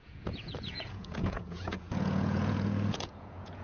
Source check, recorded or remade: remade